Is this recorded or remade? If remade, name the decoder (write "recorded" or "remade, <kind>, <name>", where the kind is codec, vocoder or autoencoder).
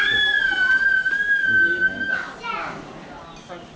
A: recorded